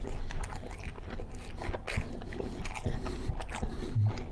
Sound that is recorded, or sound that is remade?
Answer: recorded